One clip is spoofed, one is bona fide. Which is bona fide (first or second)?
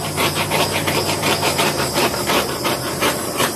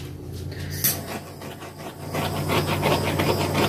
second